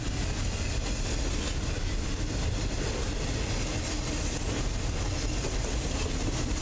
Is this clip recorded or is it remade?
recorded